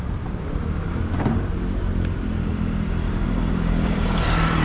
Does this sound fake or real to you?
fake